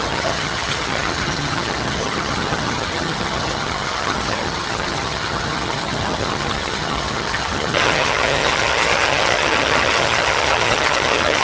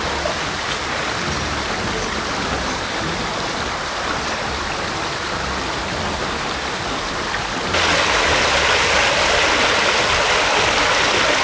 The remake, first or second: first